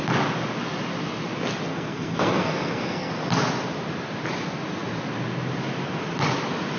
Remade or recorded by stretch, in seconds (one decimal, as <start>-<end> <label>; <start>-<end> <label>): 0.0-1.7 recorded; 1.7-3.1 remade; 3.1-6.8 recorded